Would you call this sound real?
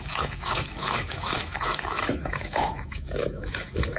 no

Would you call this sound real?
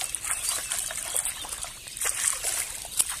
yes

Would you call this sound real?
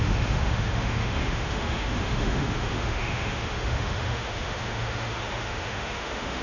no